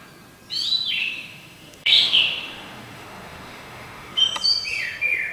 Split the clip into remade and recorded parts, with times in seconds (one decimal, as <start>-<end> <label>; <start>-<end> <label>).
0.0-1.0 recorded; 1.0-4.2 remade; 4.2-5.3 recorded